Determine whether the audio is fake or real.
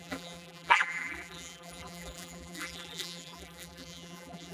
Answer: fake